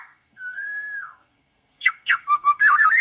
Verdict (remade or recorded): remade